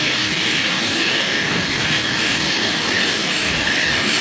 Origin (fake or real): fake